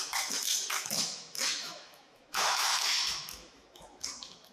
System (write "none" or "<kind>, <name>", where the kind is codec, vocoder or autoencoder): autoencoder, DAC-VAE